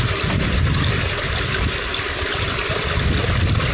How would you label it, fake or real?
real